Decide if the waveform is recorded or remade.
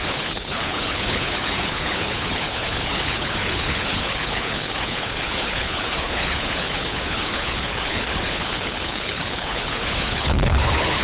remade